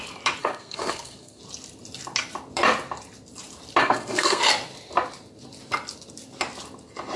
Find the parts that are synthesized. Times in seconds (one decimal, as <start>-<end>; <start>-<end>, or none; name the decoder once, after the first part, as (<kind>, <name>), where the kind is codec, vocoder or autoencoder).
0.4-1.4 (codec, SNAC); 3.8-4.4